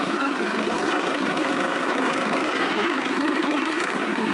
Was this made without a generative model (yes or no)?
no